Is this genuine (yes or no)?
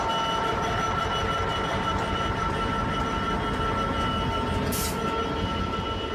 yes